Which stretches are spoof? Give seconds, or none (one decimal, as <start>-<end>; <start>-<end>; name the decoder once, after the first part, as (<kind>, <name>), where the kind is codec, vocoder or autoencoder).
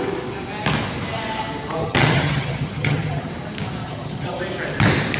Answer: 1.8-3.3 (vocoder, HiFi-GAN); 3.8-4.4